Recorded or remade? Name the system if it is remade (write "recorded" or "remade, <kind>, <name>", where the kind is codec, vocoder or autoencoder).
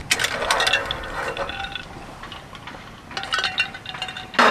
recorded